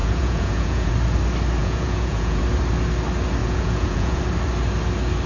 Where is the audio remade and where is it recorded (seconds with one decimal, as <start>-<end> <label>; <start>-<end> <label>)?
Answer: 0.0-0.9 remade; 0.9-1.6 recorded; 1.6-2.4 remade; 2.4-3.4 recorded; 3.4-4.2 remade; 4.2-5.3 recorded